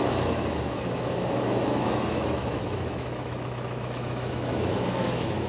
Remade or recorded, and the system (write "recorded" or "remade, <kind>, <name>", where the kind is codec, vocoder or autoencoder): remade, autoencoder, DAC-VAE